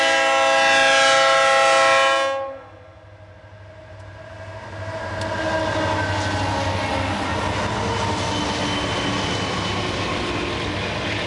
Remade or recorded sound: recorded